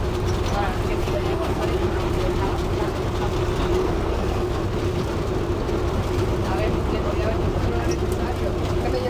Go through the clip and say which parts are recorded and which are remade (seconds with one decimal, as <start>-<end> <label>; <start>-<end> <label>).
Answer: 0.0-1.0 recorded; 1.0-1.6 remade; 1.6-3.8 recorded; 3.8-4.6 remade; 4.6-9.1 recorded

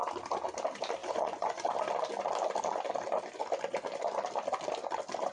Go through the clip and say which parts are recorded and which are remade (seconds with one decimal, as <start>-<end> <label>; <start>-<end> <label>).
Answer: 0.0-1.0 recorded; 1.0-1.7 remade; 1.7-5.3 recorded

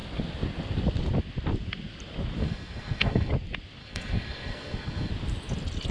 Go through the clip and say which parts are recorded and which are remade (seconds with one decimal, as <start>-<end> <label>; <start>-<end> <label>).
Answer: 0.0-2.4 recorded; 2.4-3.3 remade; 3.3-3.8 recorded; 3.8-5.1 remade; 5.1-5.9 recorded

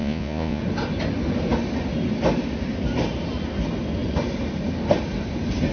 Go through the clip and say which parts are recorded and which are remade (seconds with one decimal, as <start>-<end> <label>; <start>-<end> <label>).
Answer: 0.0-0.6 remade; 0.6-5.7 recorded

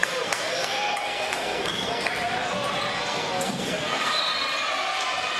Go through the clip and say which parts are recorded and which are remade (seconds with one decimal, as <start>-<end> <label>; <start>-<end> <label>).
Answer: 0.0-2.1 remade; 2.1-2.9 recorded; 2.9-4.2 remade; 4.2-5.4 recorded

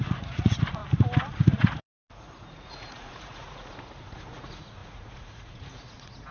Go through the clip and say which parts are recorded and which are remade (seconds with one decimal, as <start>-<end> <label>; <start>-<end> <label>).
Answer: 0.0-0.8 remade; 0.8-1.3 recorded; 1.3-6.3 remade

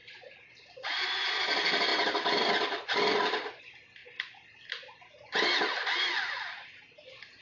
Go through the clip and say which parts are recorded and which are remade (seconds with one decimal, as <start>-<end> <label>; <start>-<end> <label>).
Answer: 0.0-1.3 remade; 1.3-1.9 recorded; 1.9-3.6 remade; 3.6-4.0 recorded; 4.0-5.1 remade; 5.1-7.4 recorded